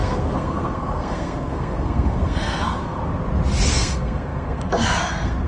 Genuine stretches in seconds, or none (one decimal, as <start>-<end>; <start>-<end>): 3.0-3.7